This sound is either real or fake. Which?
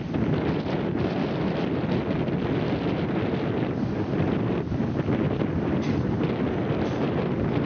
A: real